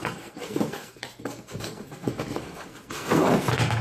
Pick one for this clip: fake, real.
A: fake